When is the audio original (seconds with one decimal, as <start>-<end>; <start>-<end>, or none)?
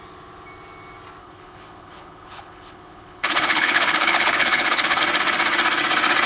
0.0-1.2; 5.0-6.3